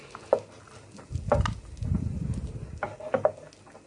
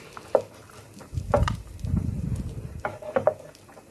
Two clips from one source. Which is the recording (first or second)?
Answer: first